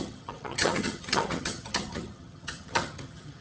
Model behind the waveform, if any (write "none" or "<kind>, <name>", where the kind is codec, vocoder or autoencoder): vocoder, HiFi-GAN